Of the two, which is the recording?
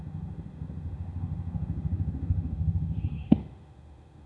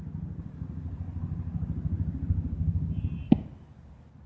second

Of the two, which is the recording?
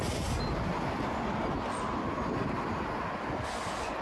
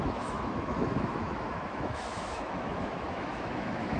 first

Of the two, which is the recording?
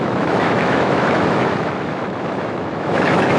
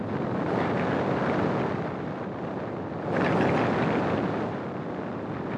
second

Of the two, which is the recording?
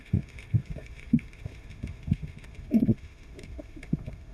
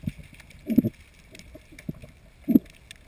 second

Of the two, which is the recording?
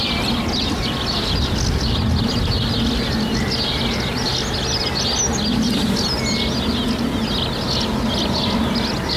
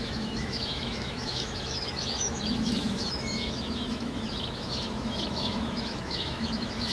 first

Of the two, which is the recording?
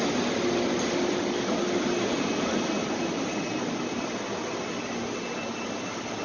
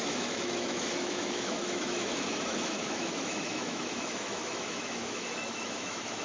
first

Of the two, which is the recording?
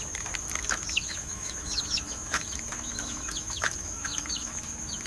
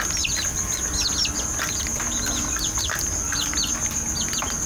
second